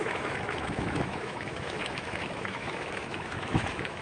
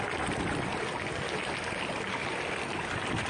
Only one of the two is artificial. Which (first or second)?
first